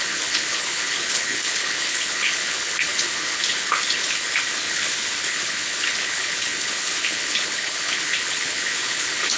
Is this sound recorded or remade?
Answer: remade